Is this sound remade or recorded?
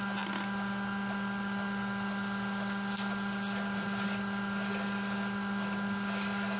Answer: recorded